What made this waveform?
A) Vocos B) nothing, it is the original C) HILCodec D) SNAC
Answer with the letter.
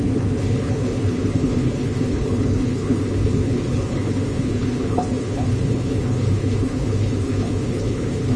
C